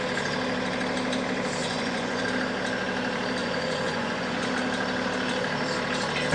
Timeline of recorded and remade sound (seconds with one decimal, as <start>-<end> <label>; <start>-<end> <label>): 0.0-1.6 recorded; 1.6-2.2 remade; 2.2-3.4 recorded; 3.4-4.5 remade; 4.5-6.3 recorded

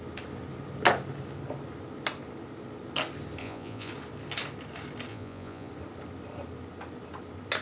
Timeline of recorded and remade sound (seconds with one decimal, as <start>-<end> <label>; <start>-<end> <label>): 0.0-3.4 recorded; 3.4-3.9 remade; 3.9-5.1 recorded; 5.1-5.7 remade; 5.7-7.6 recorded

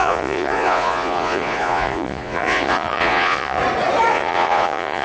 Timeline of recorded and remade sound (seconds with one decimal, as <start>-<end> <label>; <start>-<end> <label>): 0.0-3.6 remade; 3.6-4.1 recorded; 4.1-5.0 remade

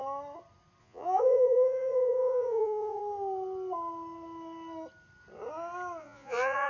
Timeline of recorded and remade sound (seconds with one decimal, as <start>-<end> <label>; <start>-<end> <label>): 0.0-0.8 recorded; 0.8-3.0 remade; 3.0-6.0 recorded; 6.0-6.7 remade

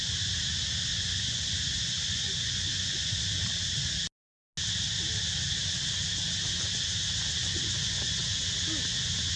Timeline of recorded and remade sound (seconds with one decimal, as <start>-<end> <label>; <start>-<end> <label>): 0.0-0.9 recorded; 0.9-3.2 remade; 3.2-7.4 recorded; 7.4-8.2 remade; 8.2-9.4 recorded

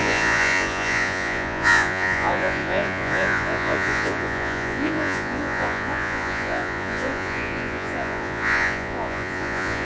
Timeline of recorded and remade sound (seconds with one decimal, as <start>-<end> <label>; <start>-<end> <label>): 0.0-9.8 remade